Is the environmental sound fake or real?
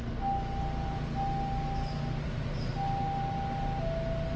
real